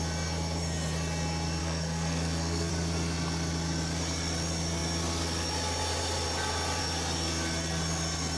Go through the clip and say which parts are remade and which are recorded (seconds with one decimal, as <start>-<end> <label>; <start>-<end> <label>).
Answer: 0.0-1.6 recorded; 1.6-2.7 remade; 2.7-8.4 recorded